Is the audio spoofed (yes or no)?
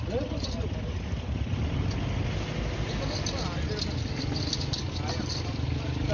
no